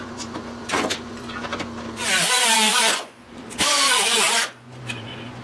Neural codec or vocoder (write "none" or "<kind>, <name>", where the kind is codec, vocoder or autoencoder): vocoder, Vocos